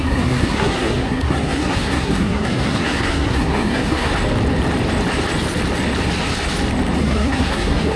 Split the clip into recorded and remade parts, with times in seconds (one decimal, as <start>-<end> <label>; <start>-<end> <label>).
0.0-4.1 remade; 4.1-7.0 recorded; 7.0-8.0 remade